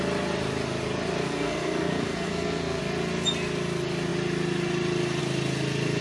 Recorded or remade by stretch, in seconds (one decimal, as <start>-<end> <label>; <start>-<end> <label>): 0.0-1.2 recorded; 1.2-2.8 remade; 2.8-6.0 recorded